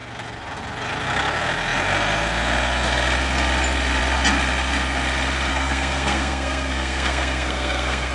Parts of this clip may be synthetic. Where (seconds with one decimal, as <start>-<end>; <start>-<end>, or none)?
5.5-8.1